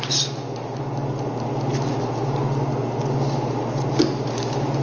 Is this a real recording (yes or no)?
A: yes